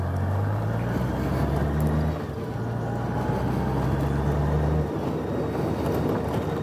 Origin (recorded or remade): recorded